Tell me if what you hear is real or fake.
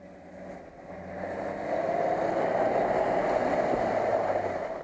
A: real